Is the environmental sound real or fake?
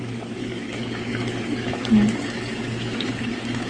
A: fake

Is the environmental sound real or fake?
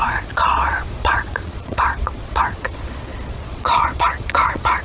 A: fake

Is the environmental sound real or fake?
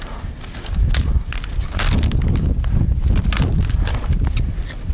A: real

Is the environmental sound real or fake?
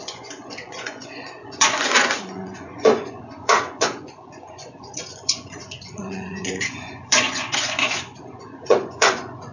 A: fake